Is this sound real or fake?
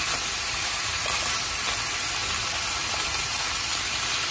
real